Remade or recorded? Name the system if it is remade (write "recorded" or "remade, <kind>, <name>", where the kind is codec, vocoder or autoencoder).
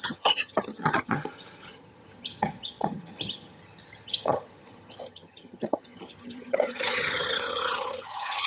remade, vocoder, HiFi-GAN